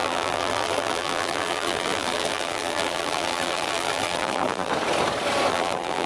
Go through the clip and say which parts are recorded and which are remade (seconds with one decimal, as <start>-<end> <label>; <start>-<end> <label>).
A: 0.0-4.7 remade; 4.7-5.5 recorded; 5.5-6.1 remade